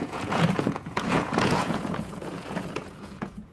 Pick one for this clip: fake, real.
fake